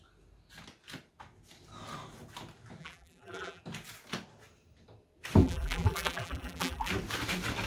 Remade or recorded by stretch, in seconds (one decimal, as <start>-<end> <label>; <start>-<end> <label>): 0.0-2.8 recorded; 2.8-3.6 remade; 3.6-5.4 recorded; 5.4-6.9 remade; 6.9-7.7 recorded